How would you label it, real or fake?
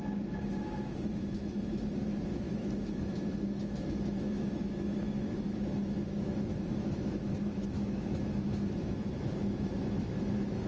fake